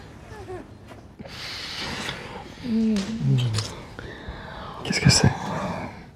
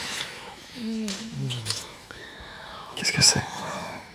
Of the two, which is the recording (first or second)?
first